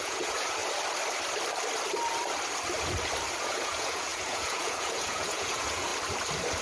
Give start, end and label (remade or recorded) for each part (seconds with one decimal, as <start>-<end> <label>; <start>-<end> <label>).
0.0-0.6 remade; 0.6-3.4 recorded; 3.4-5.9 remade; 5.9-6.6 recorded